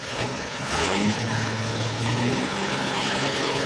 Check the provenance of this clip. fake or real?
fake